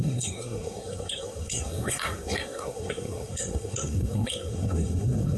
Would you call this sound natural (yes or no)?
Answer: no